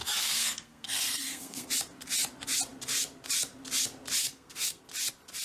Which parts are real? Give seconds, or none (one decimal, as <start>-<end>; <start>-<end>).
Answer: 1.7-4.2; 4.8-5.4